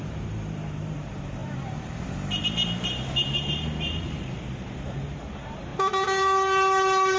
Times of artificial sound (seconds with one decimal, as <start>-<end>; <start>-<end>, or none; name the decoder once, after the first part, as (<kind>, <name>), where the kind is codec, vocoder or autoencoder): 0.0-5.7 (vocoder, BigVGAN v2)

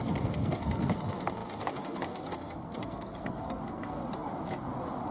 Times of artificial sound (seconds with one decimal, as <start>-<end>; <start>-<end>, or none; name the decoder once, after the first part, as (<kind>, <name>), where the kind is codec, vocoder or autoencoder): 0.0-4.0 (codec, SNAC)

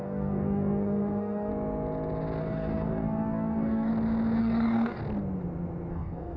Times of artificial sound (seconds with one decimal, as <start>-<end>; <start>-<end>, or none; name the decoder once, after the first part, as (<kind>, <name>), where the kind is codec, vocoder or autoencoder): 0.0-1.5 (codec, DAC); 2.4-3.9; 4.4-5.0; 5.9-6.4

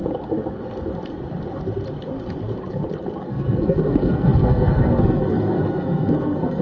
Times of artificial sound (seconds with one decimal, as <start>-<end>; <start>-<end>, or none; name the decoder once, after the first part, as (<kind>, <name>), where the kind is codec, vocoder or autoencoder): 3.2-6.6 (codec, SNAC)

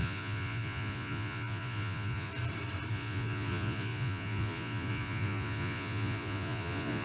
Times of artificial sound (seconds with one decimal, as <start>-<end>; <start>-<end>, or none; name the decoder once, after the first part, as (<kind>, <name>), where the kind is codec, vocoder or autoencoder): 0.0-2.3 (vocoder, Vocos); 2.9-7.0

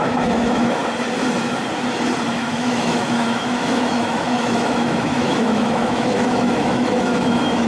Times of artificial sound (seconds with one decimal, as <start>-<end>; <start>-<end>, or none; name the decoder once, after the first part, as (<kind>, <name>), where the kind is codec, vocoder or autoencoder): 0.0-0.8 (autoencoder, DAC-VAE); 2.3-7.7

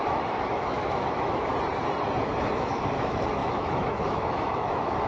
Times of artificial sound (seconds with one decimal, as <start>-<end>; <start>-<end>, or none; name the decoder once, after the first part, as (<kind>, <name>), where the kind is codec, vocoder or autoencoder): 0.0-1.5 (autoencoder, DAC-VAE); 2.2-5.1

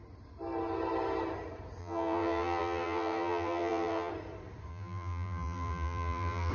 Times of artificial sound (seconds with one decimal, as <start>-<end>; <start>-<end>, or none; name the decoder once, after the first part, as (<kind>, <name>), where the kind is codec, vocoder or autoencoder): 1.8-4.1 (vocoder, BigVGAN v2); 4.7-6.5